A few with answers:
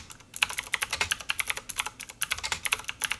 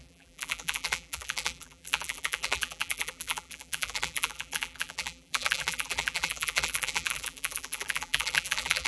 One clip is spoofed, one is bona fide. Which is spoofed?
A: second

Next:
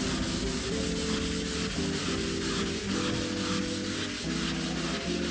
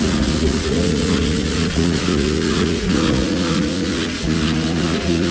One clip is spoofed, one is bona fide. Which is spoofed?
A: second